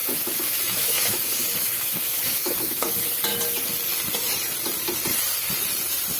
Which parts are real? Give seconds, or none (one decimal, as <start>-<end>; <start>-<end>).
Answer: 2.9-6.2